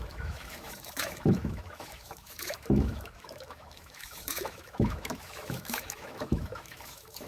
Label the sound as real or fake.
fake